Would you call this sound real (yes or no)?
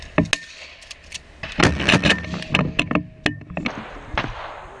yes